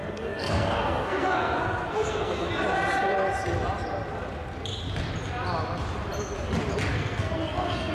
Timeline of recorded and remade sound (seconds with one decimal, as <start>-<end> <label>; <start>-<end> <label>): 0.0-2.5 remade; 2.5-6.9 recorded; 6.9-7.9 remade